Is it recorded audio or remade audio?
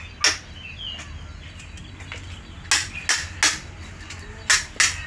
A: recorded